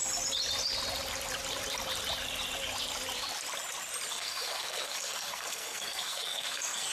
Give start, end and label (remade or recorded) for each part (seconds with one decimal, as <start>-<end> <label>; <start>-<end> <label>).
0.0-4.1 recorded; 4.1-6.9 remade